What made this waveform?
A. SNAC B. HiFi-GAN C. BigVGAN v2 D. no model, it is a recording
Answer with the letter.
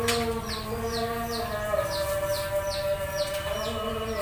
D